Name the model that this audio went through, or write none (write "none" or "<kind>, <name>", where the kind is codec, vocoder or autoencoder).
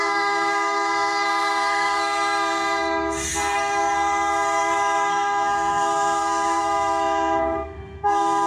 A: codec, SNAC